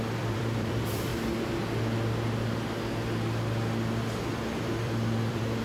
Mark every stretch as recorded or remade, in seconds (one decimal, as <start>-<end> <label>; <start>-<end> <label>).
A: 0.0-1.1 remade; 1.1-4.5 recorded; 4.5-5.6 remade